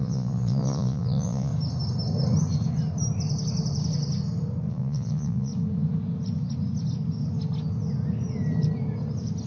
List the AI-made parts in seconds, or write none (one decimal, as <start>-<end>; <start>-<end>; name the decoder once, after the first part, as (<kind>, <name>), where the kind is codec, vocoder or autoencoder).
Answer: 0.0-1.5 (vocoder, Vocos); 4.7-5.5